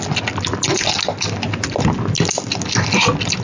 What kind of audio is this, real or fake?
real